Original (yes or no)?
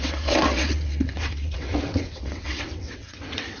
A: no